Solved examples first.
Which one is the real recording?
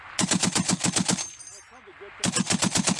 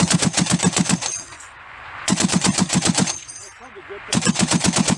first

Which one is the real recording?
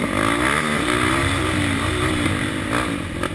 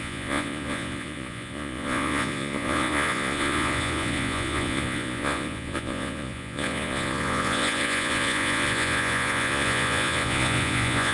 first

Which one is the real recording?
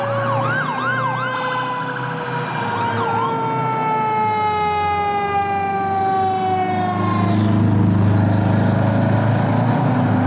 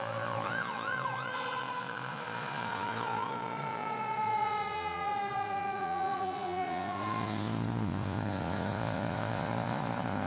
first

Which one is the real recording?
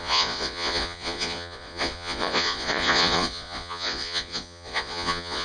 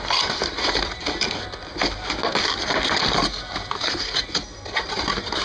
second